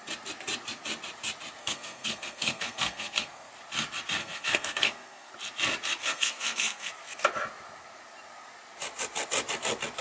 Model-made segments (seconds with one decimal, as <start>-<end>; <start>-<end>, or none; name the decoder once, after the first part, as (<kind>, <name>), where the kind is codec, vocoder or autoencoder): 1.6-3.5 (codec, SNAC); 4.2-5.3; 6.0-6.9